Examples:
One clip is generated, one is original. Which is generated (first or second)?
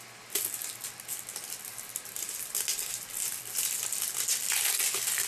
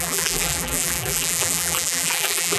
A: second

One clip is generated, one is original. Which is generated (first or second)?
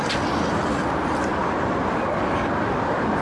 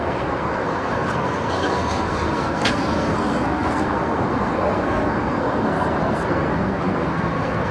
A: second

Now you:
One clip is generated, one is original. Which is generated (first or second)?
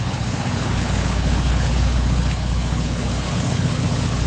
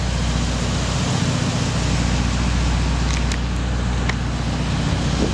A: first